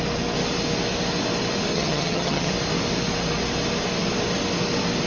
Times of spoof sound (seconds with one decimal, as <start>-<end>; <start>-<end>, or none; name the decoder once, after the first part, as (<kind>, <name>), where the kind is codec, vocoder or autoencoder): 1.7-2.5 (vocoder, HiFi-GAN)